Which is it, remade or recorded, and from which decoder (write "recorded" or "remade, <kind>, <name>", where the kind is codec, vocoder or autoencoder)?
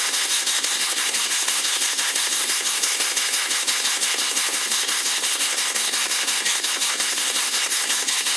remade, codec, SNAC